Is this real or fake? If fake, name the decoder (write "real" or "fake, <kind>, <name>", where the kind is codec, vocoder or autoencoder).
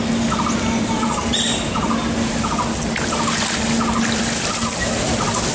real